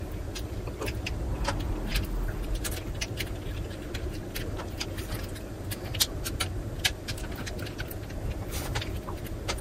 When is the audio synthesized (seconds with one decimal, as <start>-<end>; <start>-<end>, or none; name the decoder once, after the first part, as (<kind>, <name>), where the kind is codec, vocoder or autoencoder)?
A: none